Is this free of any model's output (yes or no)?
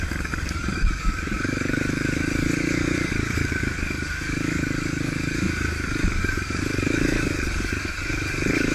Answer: no